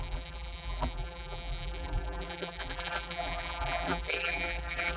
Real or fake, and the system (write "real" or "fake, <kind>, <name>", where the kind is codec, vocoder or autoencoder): fake, vocoder, BigVGAN v2